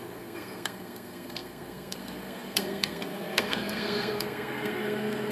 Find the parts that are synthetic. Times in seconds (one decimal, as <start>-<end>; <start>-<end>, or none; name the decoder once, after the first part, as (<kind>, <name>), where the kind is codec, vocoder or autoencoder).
0.0-5.3 (codec, SNAC)